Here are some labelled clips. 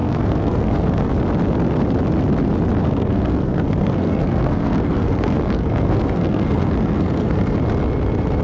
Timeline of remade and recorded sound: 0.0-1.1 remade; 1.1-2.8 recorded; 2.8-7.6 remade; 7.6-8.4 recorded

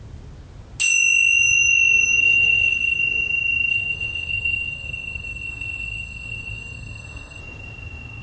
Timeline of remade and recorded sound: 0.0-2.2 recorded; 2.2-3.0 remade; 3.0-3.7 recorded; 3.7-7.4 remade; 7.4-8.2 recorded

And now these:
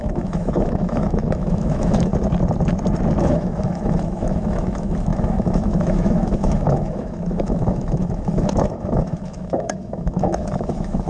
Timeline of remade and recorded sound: 0.0-2.1 remade; 2.1-3.2 recorded; 3.2-11.1 remade

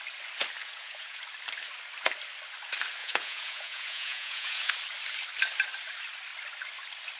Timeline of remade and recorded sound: 0.0-0.6 recorded; 0.6-1.2 remade; 1.2-3.0 recorded; 3.0-4.7 remade; 4.7-7.2 recorded

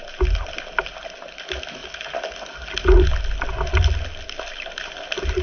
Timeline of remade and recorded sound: 0.0-5.4 recorded

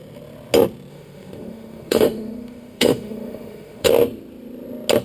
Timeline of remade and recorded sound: 0.0-0.9 recorded; 0.9-3.9 remade; 3.9-5.0 recorded

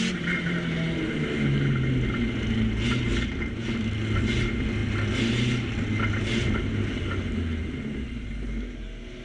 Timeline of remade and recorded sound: 0.0-9.2 recorded